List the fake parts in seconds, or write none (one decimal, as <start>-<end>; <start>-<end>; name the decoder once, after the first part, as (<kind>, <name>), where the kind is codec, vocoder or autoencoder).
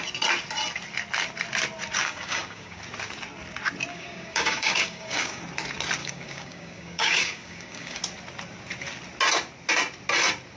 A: 2.0-2.8 (codec, DAC); 3.9-5.4; 6.0-8.0